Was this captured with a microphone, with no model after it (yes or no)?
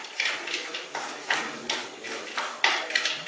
no